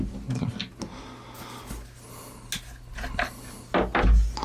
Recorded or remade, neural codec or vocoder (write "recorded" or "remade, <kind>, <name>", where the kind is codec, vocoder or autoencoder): recorded